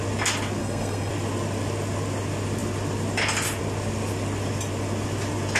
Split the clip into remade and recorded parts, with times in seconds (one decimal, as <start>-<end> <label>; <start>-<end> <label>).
0.0-0.6 recorded; 0.6-1.1 remade; 1.1-5.6 recorded